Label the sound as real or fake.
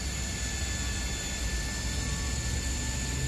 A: real